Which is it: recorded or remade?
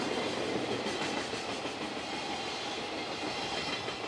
recorded